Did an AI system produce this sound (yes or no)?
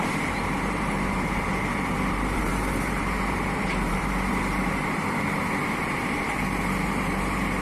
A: yes